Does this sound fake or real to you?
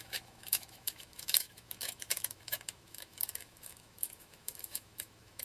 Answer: fake